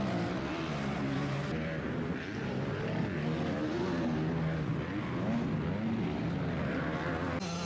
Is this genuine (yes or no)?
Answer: yes